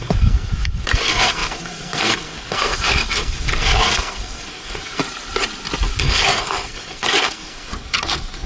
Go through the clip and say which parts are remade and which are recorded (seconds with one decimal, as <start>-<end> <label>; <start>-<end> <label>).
0.0-5.0 remade; 5.0-6.0 recorded; 6.0-8.5 remade

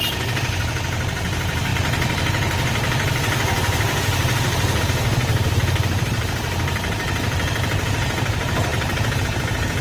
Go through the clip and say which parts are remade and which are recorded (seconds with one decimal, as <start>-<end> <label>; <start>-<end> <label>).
0.0-8.7 recorded; 8.7-9.2 remade; 9.2-9.8 recorded

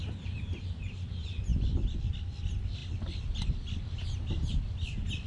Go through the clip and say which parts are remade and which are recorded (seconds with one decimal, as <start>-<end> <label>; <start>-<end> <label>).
0.0-0.6 remade; 0.6-5.3 recorded